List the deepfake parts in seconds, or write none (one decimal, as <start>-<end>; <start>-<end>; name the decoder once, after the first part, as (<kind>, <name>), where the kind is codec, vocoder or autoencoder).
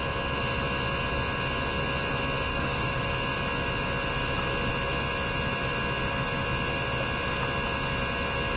2.5-3.1 (codec, DAC)